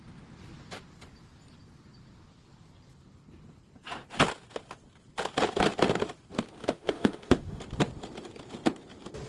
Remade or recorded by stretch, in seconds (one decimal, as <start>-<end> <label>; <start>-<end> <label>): 0.0-6.6 recorded; 6.6-7.6 remade; 7.6-9.3 recorded